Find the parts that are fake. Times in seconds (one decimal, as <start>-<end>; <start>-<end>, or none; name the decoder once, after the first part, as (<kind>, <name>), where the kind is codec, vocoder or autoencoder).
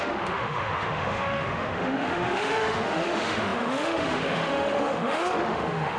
0.0-6.0 (autoencoder, DAC-VAE)